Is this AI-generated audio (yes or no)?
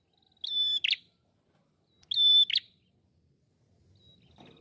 no